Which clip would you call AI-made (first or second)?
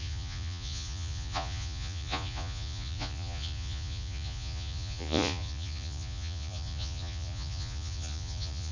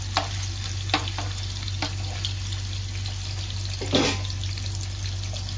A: first